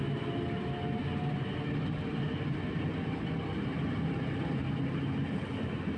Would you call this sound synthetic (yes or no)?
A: no